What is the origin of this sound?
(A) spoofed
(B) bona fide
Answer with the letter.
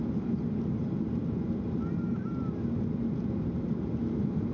B